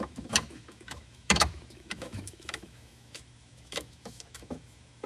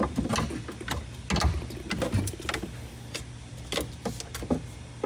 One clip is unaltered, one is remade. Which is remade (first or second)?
first